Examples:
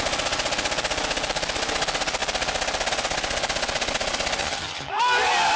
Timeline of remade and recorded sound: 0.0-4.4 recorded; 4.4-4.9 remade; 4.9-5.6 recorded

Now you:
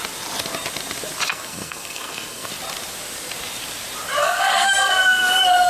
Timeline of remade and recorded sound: 0.0-1.3 recorded; 1.3-2.5 remade; 2.5-4.2 recorded; 4.2-5.7 remade

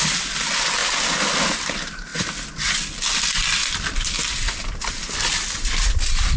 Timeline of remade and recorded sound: 0.0-6.4 recorded